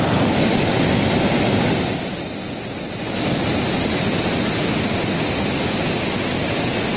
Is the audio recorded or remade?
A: recorded